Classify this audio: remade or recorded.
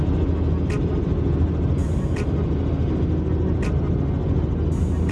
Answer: recorded